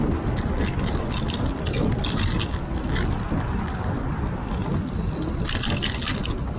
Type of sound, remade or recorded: recorded